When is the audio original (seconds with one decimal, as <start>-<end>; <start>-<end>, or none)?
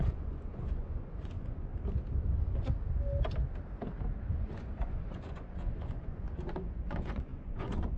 1.7-4.3